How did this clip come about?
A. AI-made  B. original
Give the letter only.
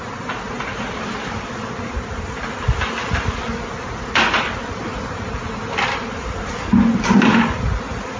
B